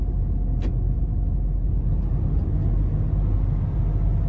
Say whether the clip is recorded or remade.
recorded